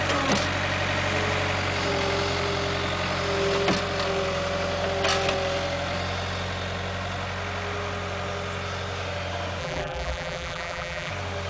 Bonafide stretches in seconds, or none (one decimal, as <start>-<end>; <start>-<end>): 0.0-9.6; 11.1-11.5